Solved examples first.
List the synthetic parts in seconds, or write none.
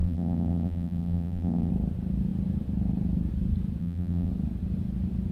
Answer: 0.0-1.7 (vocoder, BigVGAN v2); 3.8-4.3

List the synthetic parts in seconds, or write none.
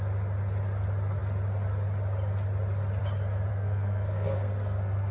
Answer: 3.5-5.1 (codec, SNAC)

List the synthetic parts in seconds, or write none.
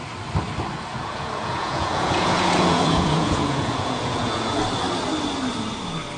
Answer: 0.9-4.6 (vocoder, Vocos)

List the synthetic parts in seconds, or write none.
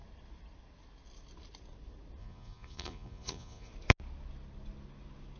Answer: 2.2-3.7 (vocoder, Vocos)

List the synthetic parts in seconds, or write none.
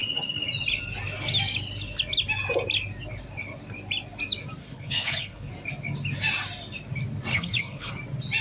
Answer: 4.6-5.5 (codec, HILCodec); 7.3-7.9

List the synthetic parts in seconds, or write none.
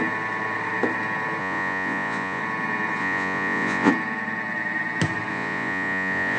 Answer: 1.4-2.4 (vocoder, Vocos); 3.0-3.9; 5.3-6.4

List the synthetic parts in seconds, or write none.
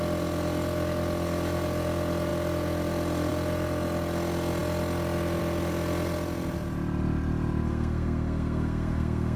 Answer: 7.7-9.4 (codec, SNAC)